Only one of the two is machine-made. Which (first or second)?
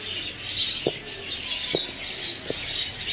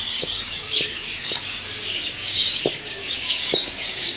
second